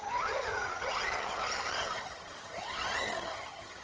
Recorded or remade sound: remade